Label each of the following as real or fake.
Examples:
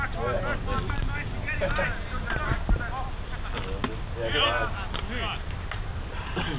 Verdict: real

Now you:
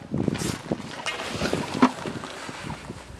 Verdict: real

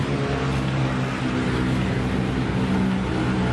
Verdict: real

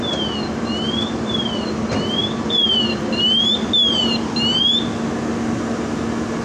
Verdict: real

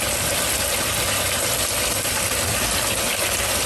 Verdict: real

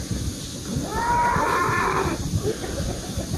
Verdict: real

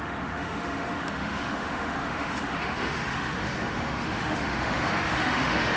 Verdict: fake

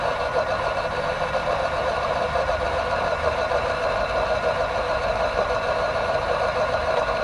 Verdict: fake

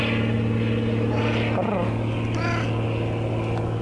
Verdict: real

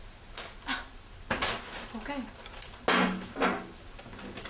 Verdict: real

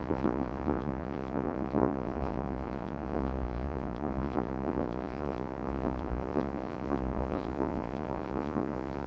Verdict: fake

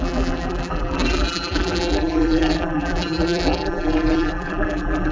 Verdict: fake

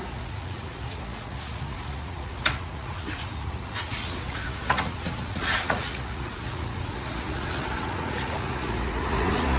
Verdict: fake